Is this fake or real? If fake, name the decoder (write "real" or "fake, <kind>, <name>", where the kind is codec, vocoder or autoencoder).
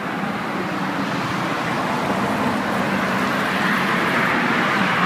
real